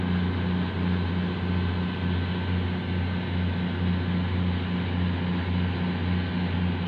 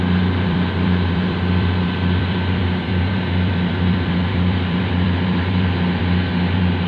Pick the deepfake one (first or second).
second